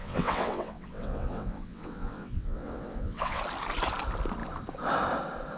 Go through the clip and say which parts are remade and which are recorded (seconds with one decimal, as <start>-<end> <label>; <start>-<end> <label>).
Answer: 0.0-3.4 remade; 3.4-5.6 recorded